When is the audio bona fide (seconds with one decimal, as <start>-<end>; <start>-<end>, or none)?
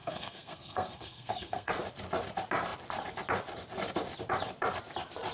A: 1.7-5.3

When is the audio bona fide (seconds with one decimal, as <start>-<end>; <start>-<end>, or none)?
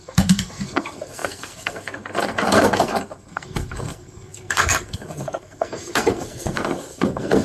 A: none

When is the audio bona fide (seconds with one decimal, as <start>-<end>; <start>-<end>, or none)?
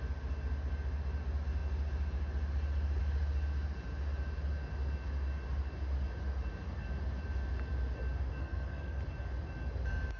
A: 0.0-8.4; 9.0-10.2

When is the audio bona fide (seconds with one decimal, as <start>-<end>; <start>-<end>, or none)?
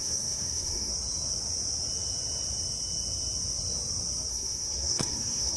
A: 0.9-4.3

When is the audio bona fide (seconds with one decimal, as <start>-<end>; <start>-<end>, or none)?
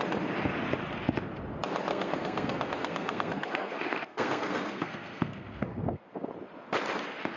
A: 0.0-1.9; 6.3-7.4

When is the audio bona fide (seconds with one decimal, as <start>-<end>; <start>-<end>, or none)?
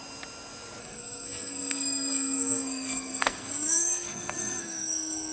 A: 0.0-0.8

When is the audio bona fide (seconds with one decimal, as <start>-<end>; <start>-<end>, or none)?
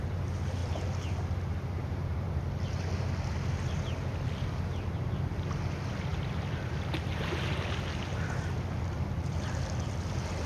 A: 0.0-10.5